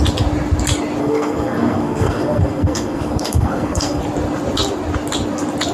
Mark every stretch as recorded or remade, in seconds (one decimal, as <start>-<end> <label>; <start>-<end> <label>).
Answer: 0.0-1.0 recorded; 1.0-4.0 remade; 4.0-5.7 recorded